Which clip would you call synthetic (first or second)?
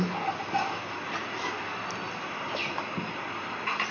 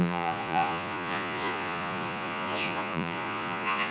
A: second